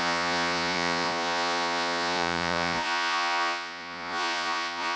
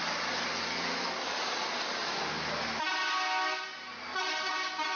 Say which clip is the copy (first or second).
first